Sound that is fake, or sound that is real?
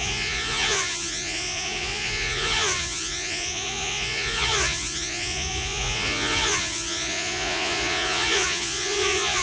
fake